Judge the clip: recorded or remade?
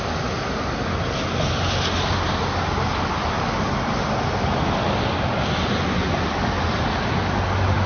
recorded